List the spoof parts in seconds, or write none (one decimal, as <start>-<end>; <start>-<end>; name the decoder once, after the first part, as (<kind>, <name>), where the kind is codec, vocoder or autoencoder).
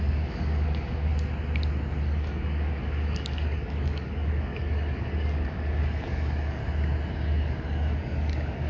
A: 0.0-1.1 (codec, DAC); 2.0-6.6; 7.1-8.7